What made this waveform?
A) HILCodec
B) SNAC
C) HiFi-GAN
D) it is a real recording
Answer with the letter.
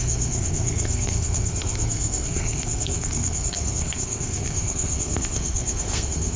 B